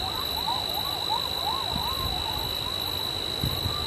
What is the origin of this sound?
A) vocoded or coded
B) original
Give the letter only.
B